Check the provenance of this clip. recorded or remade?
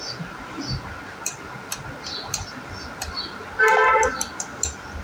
recorded